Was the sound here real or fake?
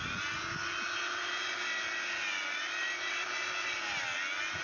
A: real